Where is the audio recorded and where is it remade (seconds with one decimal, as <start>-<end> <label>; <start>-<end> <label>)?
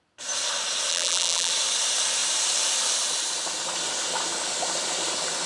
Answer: 0.0-0.9 recorded; 0.9-1.5 remade; 1.5-5.5 recorded